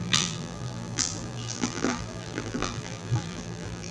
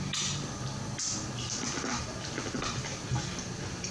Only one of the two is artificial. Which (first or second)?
first